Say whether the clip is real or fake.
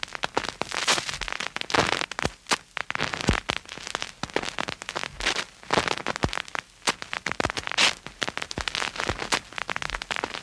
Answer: real